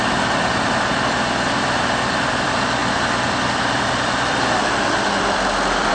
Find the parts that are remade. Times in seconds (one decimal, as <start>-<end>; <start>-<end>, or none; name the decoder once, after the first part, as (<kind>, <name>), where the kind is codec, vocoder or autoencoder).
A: 0.0-5.9 (vocoder, BigVGAN v2)